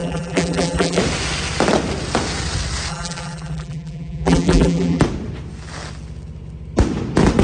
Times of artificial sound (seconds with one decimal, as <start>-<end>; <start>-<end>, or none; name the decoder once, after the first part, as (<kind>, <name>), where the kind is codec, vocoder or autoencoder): 0.0-1.0 (vocoder, BigVGAN v2); 2.9-5.0